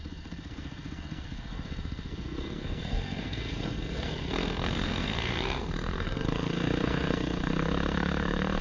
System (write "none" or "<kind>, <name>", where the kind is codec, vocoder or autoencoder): codec, SNAC